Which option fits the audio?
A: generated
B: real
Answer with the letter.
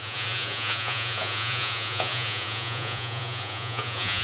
A